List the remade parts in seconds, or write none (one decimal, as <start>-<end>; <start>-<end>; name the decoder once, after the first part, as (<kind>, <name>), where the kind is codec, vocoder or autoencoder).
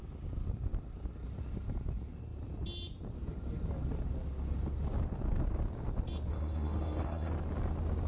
6.3-7.3 (codec, SNAC)